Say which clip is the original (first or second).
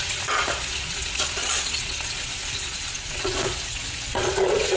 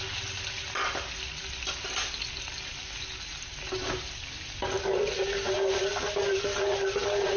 second